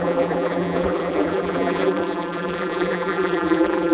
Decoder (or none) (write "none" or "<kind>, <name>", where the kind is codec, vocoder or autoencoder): vocoder, BigVGAN v2